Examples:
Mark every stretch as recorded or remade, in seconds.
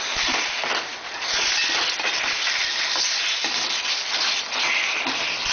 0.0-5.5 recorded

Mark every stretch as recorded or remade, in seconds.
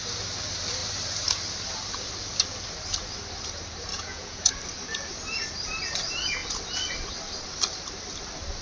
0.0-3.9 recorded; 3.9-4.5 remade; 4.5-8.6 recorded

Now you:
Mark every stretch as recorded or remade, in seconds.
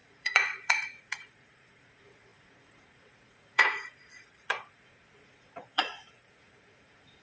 0.0-7.2 remade